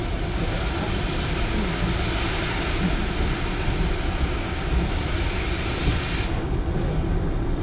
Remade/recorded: recorded